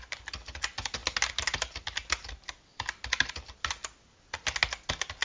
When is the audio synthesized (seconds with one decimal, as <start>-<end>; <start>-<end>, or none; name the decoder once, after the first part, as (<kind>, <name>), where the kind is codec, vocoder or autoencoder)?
none

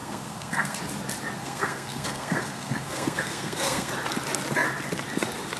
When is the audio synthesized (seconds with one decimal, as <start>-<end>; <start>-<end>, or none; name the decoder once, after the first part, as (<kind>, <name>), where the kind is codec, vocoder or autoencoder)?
0.0-0.8 (codec, SNAC); 1.4-3.9

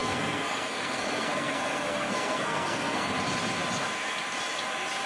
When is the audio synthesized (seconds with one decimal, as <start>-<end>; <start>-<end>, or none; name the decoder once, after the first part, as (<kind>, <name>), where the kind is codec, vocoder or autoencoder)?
0.0-3.1 (codec, SNAC)

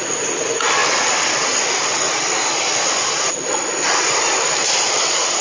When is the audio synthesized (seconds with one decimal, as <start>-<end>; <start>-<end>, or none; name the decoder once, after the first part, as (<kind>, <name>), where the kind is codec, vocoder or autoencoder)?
none